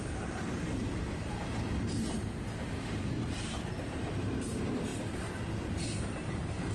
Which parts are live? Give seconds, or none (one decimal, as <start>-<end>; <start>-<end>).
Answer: 4.9-6.0